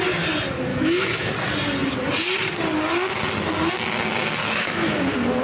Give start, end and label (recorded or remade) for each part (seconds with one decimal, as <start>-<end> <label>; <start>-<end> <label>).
0.0-0.7 recorded; 0.7-1.3 remade; 1.3-4.4 recorded; 4.4-5.0 remade; 5.0-5.4 recorded